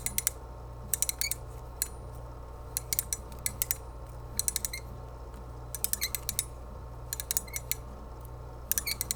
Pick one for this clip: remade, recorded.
recorded